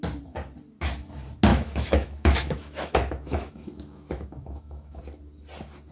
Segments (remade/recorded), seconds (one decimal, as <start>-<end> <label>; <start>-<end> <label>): 0.0-1.5 recorded; 1.5-5.0 remade; 5.0-5.9 recorded

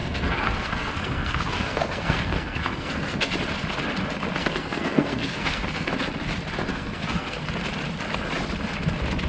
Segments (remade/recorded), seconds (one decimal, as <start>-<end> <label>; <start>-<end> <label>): 0.0-3.4 remade; 3.4-4.4 recorded; 4.4-5.9 remade; 5.9-6.7 recorded; 6.7-7.4 remade; 7.4-9.3 recorded

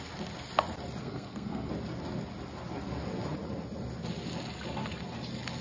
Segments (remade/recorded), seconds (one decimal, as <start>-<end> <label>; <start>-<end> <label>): 0.0-1.0 recorded; 1.0-1.7 remade; 1.7-5.6 recorded

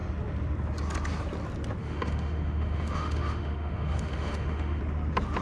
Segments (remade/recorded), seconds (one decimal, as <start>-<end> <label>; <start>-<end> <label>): 0.0-1.8 recorded; 1.8-4.8 remade; 4.8-5.4 recorded